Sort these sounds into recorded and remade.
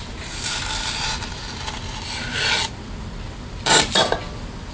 recorded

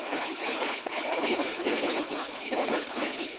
remade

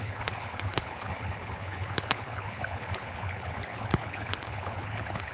remade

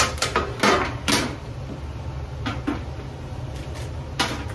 recorded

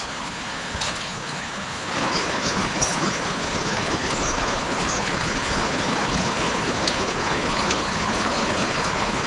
remade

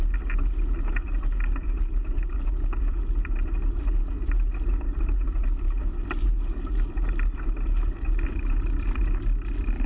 recorded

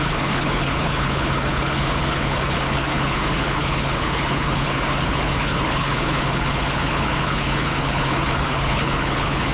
remade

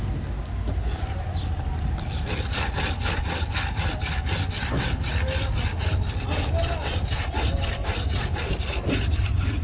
recorded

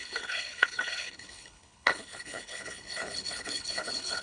remade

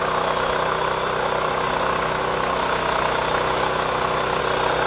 recorded